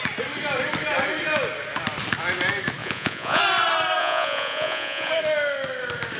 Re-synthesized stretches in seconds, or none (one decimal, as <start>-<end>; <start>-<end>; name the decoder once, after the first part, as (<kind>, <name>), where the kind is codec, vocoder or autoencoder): 2.8-3.4 (vocoder, Vocos); 4.0-5.1

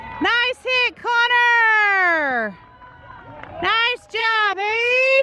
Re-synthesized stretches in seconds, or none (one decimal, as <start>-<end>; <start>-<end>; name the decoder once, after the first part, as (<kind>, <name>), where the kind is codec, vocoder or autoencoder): 4.2-5.2 (codec, SNAC)

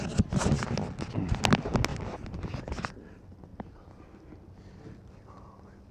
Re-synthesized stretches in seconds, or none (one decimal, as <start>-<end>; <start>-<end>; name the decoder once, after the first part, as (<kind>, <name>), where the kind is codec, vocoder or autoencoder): 1.9-2.6 (vocoder, BigVGAN v2)

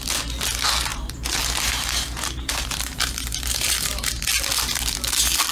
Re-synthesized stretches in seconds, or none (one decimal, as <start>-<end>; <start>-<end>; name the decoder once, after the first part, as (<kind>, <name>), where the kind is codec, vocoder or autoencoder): 0.9-4.2 (vocoder, BigVGAN v2)

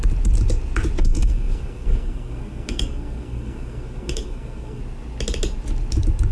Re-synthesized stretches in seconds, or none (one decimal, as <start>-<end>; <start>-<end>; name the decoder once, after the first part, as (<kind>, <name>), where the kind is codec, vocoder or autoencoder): 1.0-4.8 (codec, SNAC)

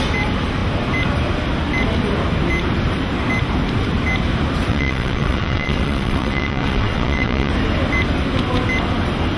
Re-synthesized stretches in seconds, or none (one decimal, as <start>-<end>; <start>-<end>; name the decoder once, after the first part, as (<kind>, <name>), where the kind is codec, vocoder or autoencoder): 4.7-7.5 (vocoder, WaveNeXt)

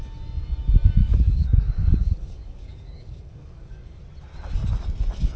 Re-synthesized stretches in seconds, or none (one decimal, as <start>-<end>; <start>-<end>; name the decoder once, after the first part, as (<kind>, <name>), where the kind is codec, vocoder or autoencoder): 1.0-4.0 (codec, DAC)

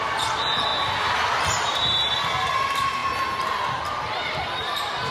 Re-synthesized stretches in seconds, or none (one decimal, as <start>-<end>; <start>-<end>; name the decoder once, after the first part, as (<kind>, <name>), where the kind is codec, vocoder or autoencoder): 0.0-0.7 (vocoder, BigVGAN v2); 1.4-3.0; 4.4-5.1